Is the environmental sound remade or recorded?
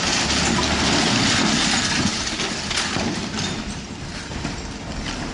recorded